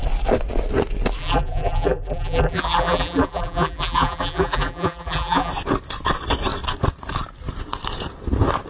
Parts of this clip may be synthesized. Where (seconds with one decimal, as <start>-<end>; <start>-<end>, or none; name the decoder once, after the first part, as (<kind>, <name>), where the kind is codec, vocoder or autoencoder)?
1.2-5.5 (vocoder, BigVGAN v2)